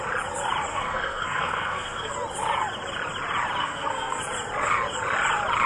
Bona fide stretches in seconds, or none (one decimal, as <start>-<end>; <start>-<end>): 0.0-0.7; 2.1-3.6; 4.2-5.7